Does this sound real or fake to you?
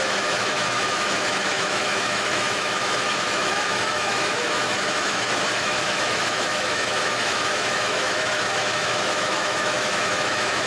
fake